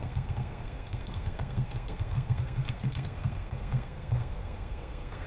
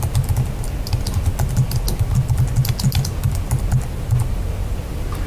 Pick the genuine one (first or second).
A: second